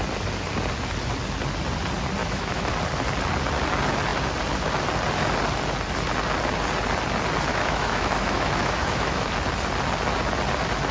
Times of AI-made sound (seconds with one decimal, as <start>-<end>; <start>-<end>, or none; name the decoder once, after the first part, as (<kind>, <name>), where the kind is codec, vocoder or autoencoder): 2.2-2.7 (autoencoder, DAC-VAE); 7.5-9.3

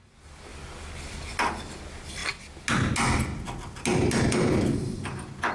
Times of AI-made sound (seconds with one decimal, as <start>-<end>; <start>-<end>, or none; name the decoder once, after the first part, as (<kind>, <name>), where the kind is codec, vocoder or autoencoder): none

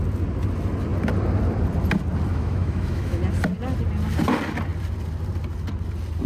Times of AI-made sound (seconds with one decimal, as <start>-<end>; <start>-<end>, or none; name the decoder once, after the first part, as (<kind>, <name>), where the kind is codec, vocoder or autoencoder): 2.3-3.2 (autoencoder, DAC-VAE)

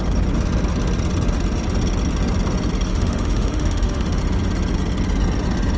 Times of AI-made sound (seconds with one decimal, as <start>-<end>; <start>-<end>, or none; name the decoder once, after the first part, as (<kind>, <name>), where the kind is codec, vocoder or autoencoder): 2.9-4.2 (autoencoder, DAC-VAE)

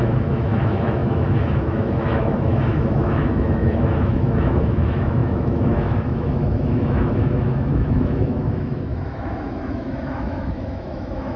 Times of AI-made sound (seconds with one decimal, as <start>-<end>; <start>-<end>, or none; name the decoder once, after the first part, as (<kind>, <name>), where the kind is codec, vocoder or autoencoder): 0.0-11.4 (autoencoder, DAC-VAE)

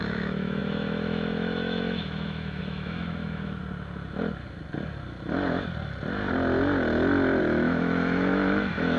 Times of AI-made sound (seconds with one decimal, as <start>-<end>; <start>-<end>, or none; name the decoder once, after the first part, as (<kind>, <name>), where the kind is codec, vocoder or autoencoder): 0.0-3.6 (autoencoder, DAC-VAE); 7.4-9.0

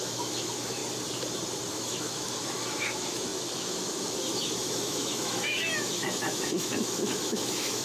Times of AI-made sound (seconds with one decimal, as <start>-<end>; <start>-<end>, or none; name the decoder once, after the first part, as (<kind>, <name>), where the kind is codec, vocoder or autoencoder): 0.0-0.8 (autoencoder, DAC-VAE); 1.7-7.8